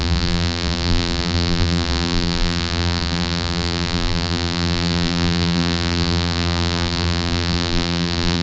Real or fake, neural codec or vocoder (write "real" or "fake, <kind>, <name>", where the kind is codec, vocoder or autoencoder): fake, vocoder, BigVGAN v2